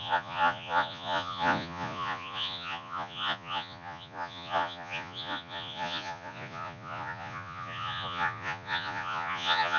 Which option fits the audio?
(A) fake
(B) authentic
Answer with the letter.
A